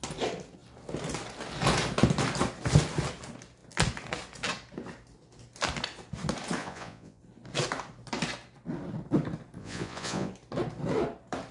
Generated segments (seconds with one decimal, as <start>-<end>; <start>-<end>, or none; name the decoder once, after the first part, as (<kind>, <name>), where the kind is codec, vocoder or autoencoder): 6.6-7.2 (vocoder, Vocos); 9.6-10.3